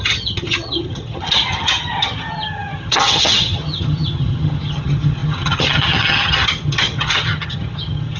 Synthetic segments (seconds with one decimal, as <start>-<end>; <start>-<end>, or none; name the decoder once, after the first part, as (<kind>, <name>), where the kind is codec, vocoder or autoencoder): 0.0-8.2 (vocoder, HiFi-GAN)